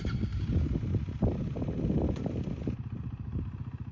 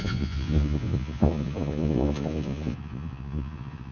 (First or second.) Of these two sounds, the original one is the first